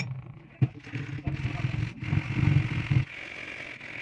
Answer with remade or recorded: recorded